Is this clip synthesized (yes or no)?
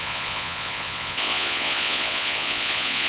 yes